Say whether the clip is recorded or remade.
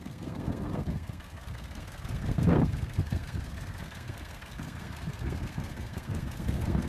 remade